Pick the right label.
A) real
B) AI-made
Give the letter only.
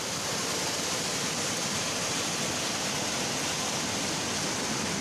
A